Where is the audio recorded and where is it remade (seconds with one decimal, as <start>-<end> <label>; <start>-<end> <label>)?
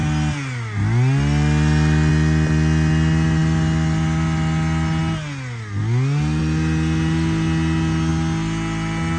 0.0-9.2 recorded